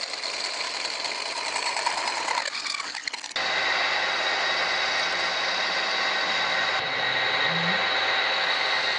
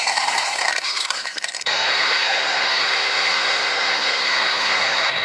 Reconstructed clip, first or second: second